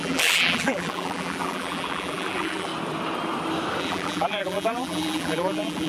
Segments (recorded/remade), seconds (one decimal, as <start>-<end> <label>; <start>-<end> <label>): 0.0-2.7 remade; 2.7-3.8 recorded; 3.8-5.9 remade